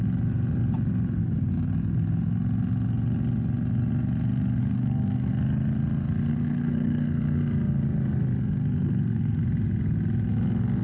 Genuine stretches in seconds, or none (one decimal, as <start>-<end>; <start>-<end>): 0.0-4.6; 5.3-6.3; 7.4-8.4; 9.4-10.8